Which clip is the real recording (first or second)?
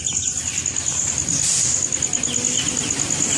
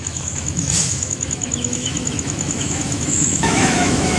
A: first